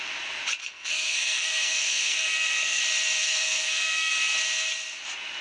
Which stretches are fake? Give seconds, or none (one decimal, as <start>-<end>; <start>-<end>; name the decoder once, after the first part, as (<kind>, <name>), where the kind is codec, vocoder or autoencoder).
0.6-2.8 (codec, SNAC); 3.2-4.1

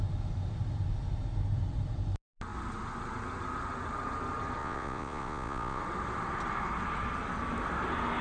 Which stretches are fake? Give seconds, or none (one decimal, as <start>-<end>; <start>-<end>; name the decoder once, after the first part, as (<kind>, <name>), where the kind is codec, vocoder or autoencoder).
4.6-5.8 (vocoder, Vocos)

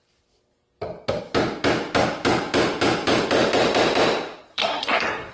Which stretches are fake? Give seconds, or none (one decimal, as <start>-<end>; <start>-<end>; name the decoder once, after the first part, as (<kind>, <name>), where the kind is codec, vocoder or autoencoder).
4.5-5.3 (codec, SNAC)